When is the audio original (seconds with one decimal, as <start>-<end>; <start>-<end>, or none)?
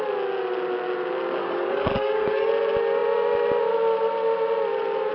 0.0-1.4; 2.5-5.1